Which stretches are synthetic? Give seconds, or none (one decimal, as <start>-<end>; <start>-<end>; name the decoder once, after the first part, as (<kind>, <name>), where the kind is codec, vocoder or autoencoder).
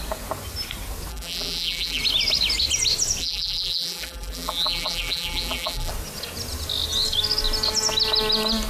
1.1-2.0 (vocoder, BigVGAN v2); 3.2-5.9